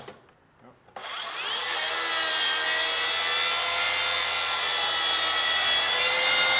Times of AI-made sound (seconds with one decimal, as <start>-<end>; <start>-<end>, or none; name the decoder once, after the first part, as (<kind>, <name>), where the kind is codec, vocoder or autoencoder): none